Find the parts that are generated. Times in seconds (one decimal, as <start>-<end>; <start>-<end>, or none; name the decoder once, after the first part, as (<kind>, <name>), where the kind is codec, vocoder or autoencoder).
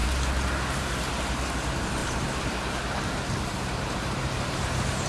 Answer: 2.0-5.1 (vocoder, BigVGAN v2)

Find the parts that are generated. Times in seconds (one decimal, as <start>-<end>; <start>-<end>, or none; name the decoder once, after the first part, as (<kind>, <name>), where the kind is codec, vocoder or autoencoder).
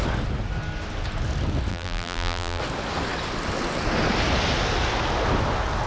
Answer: 1.7-2.6 (vocoder, BigVGAN v2)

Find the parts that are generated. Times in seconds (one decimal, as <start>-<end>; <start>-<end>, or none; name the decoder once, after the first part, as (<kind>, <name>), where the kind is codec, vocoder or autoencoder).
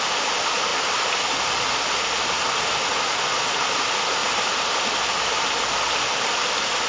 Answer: 4.2-4.7 (vocoder, BigVGAN v2)